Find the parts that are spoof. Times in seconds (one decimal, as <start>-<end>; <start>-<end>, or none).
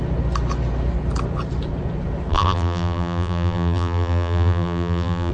2.3-5.3